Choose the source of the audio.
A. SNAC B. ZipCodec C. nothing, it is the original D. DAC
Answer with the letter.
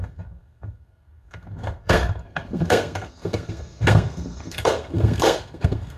A